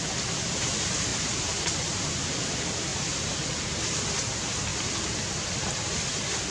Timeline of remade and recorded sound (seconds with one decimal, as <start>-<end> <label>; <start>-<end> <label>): 0.0-1.1 recorded; 1.1-2.5 remade; 2.5-4.7 recorded; 4.7-5.5 remade; 5.5-6.5 recorded